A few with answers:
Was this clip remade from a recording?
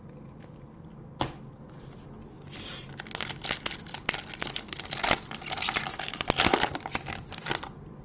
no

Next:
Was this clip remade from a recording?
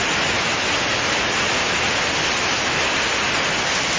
no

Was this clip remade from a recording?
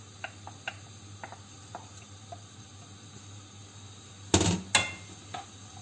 no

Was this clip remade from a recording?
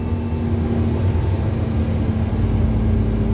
no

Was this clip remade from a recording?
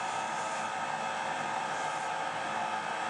no